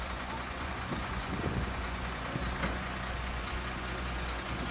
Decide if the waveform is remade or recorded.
remade